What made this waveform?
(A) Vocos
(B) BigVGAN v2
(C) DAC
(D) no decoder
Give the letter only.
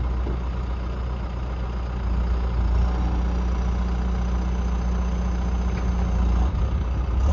D